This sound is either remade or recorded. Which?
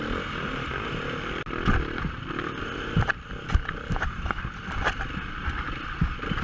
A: recorded